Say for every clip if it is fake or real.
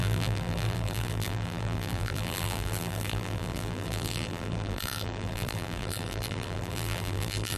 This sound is fake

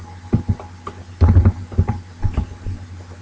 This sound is real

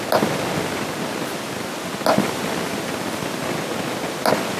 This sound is real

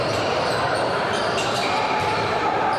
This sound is fake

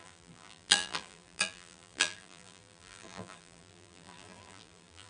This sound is fake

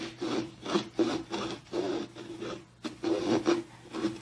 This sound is real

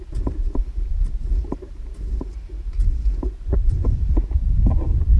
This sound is fake